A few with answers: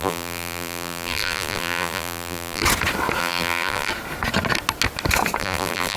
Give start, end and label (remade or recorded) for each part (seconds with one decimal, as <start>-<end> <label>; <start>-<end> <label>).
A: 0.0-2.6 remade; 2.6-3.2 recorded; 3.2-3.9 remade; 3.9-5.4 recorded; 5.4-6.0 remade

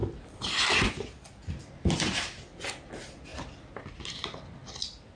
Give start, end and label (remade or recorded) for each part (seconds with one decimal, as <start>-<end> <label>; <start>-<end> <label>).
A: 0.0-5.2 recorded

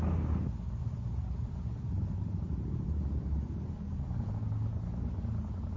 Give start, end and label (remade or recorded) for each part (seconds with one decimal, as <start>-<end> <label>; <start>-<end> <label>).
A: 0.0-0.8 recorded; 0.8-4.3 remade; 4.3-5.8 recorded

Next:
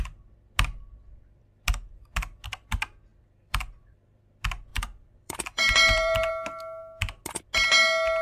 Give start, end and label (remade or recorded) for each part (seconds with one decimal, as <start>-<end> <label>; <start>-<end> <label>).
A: 0.0-3.1 recorded; 3.1-4.2 remade; 4.2-4.7 recorded; 4.7-6.3 remade; 6.3-8.2 recorded